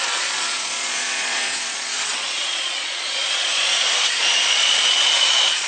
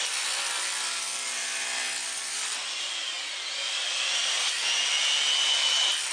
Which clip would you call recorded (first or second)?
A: second